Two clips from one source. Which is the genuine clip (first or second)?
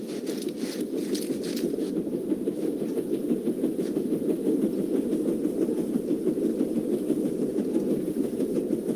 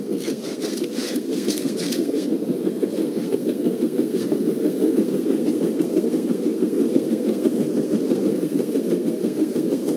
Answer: first